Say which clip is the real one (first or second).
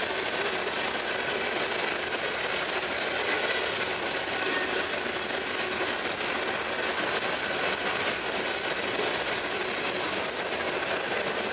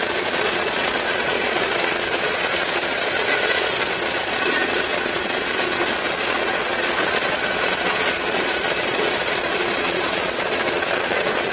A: first